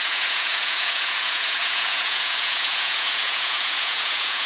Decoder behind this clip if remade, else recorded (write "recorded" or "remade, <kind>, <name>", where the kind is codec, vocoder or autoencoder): remade, vocoder, Vocos